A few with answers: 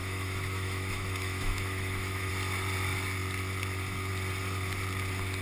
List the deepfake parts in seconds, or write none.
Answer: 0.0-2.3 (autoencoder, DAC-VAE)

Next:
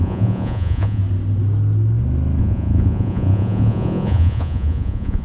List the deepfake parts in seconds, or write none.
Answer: 0.0-1.0 (vocoder, Vocos); 2.4-5.2

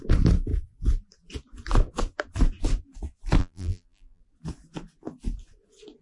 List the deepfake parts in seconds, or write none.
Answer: 3.4-4.2 (vocoder, BigVGAN v2)

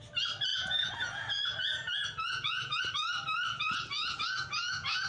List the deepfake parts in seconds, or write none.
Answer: 0.5-2.8 (vocoder, Vocos); 3.5-5.1

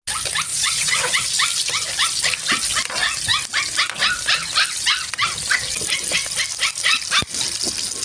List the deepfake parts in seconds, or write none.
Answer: 0.5-1.1 (vocoder, Vocos)

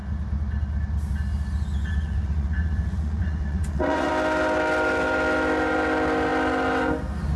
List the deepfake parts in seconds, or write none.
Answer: 1.8-4.1 (vocoder, Vocos)

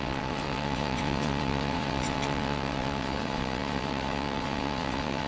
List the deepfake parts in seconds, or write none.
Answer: 0.0-5.3 (vocoder, WaveNeXt)

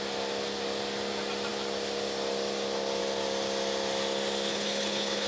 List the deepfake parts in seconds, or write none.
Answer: 4.5-5.3 (codec, HILCodec)